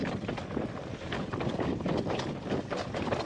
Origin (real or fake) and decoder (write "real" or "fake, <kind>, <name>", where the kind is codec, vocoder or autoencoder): real